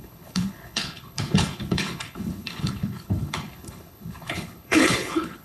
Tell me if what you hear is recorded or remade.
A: remade